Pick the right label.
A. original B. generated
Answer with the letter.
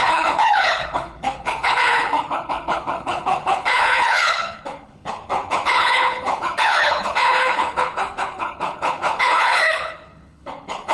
B